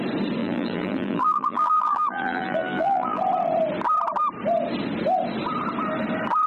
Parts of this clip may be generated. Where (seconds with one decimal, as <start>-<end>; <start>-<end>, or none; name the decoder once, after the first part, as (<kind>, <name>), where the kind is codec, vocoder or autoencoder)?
0.4-3.2 (vocoder, BigVGAN v2)